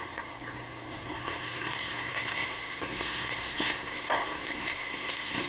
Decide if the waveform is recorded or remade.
remade